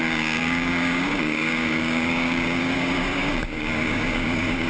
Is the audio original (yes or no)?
no